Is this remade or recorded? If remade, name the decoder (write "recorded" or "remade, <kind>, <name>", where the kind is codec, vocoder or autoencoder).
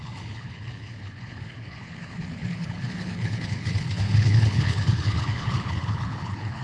remade, codec, HILCodec